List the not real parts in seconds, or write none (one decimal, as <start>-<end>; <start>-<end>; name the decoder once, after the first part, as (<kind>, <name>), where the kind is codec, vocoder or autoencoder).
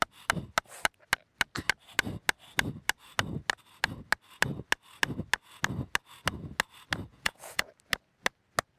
7.1-7.7 (vocoder, Vocos)